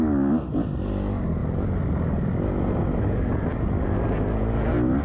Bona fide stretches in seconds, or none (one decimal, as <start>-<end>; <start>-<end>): 0.0-5.0